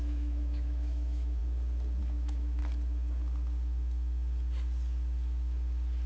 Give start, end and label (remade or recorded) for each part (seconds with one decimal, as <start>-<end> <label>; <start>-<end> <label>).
0.0-1.4 remade; 1.4-2.0 recorded; 2.0-2.6 remade; 2.6-6.1 recorded